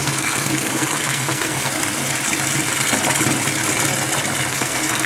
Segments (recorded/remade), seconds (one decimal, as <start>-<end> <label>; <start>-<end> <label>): 0.0-1.7 remade; 1.7-4.5 recorded; 4.5-5.1 remade